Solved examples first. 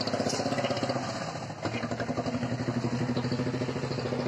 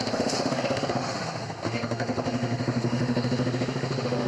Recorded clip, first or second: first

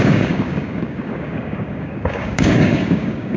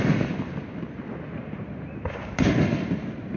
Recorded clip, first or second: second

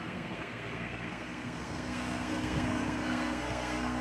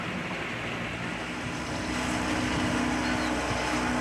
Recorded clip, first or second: second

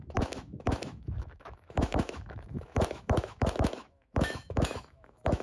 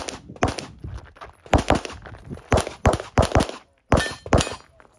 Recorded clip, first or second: second